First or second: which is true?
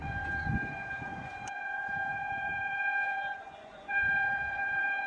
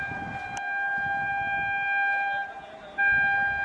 second